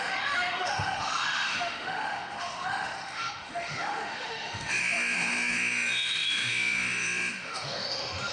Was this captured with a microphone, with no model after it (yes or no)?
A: no